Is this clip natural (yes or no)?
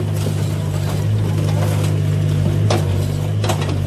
yes